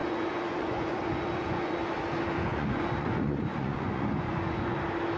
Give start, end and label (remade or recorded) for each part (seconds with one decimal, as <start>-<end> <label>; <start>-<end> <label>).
0.0-1.8 remade; 1.8-2.5 recorded; 2.5-4.8 remade; 4.8-5.2 recorded